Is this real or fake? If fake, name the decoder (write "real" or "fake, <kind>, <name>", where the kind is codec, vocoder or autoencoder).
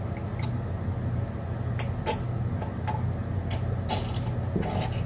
real